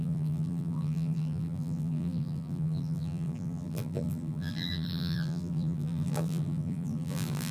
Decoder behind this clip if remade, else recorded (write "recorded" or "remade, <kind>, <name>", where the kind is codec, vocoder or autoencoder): remade, vocoder, BigVGAN v2